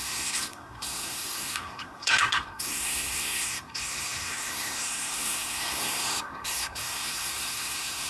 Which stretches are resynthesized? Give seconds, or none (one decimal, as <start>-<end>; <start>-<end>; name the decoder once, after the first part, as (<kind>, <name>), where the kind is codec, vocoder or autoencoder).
0.0-8.1 (codec, SNAC)